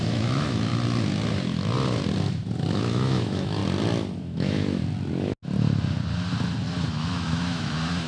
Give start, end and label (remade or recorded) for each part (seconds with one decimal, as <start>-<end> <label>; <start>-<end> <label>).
0.0-0.7 remade; 0.7-2.7 recorded; 2.7-3.6 remade; 3.6-4.2 recorded; 4.2-4.8 remade; 4.8-6.9 recorded; 6.9-8.1 remade